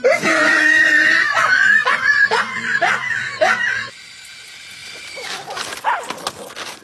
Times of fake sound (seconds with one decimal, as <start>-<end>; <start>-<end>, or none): 0.4-2.9